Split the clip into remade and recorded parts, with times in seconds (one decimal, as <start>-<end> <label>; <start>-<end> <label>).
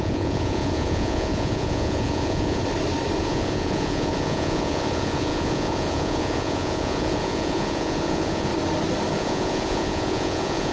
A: 0.0-2.6 remade; 2.6-3.2 recorded; 3.2-8.5 remade; 8.5-9.1 recorded; 9.1-10.7 remade